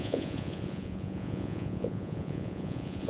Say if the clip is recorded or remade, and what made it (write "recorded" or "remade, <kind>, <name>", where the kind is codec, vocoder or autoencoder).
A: remade, vocoder, Vocos